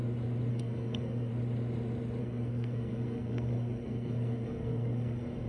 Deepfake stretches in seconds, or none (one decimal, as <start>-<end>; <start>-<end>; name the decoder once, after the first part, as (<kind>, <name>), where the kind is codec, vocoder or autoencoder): 0.5-1.3 (codec, SNAC); 2.2-5.5